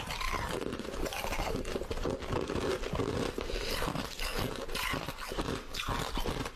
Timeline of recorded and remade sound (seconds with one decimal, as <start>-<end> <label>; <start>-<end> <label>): 0.0-1.9 remade; 1.9-3.1 recorded; 3.1-4.3 remade; 4.3-5.3 recorded; 5.3-6.6 remade